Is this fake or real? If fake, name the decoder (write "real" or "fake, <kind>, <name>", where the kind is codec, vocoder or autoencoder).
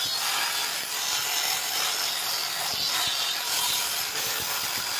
real